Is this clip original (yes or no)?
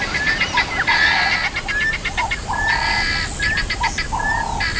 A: yes